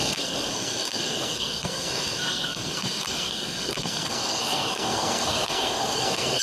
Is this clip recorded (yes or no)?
no